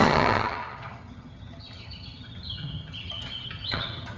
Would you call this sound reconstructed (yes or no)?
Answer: yes